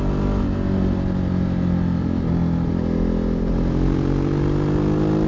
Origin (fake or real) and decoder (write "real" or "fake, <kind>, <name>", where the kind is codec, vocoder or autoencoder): real